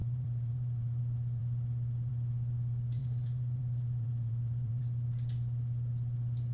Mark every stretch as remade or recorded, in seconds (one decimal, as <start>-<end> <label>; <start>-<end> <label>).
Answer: 0.0-1.0 remade; 1.0-3.0 recorded; 3.0-4.8 remade; 4.8-6.5 recorded